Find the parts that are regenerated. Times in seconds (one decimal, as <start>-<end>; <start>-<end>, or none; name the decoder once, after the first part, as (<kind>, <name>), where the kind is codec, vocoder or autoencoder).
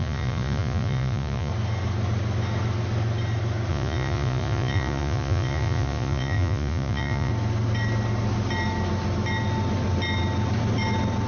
0.0-1.5 (vocoder, Vocos); 3.7-7.3